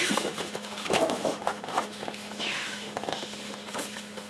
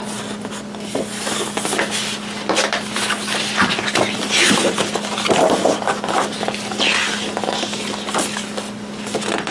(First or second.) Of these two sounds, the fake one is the first